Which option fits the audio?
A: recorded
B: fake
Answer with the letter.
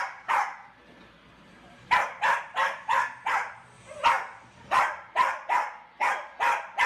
A